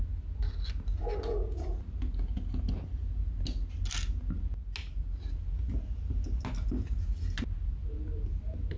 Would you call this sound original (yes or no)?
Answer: yes